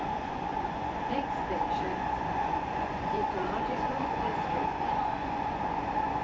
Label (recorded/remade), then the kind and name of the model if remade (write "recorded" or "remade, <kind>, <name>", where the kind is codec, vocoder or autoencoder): remade, vocoder, Vocos